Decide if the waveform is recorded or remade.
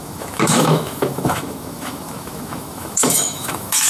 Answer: remade